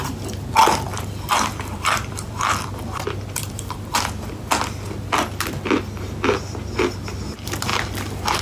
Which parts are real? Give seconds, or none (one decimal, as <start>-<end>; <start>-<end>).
0.0-0.9; 4.5-8.4